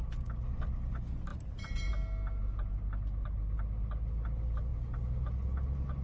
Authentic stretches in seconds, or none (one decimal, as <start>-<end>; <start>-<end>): 0.9-1.3; 1.9-6.0